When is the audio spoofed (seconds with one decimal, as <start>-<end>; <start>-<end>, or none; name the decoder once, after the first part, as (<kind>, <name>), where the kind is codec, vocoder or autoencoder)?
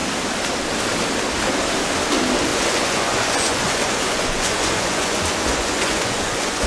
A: 2.5-6.7 (vocoder, Vocos)